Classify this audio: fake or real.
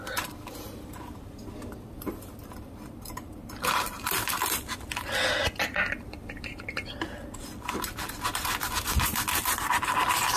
real